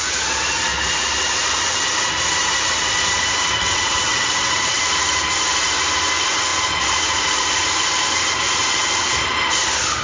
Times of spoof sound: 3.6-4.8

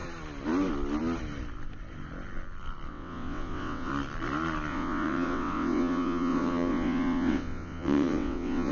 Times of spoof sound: 2.9-3.9; 4.7-8.7

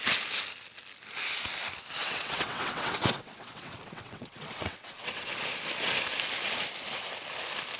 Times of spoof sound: 2.0-5.3

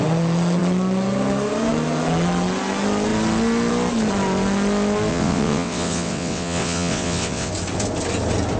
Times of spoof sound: 5.1-7.5

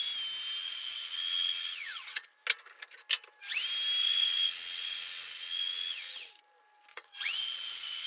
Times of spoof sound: 0.6-2.3; 4.0-6.3; 6.9-8.1

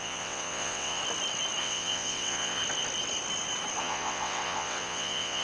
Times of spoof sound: 0.0-1.0; 1.6-2.6; 3.8-5.4

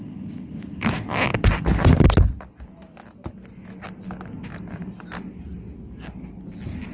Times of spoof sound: none